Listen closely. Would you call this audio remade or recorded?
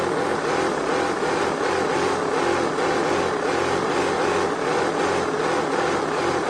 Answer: recorded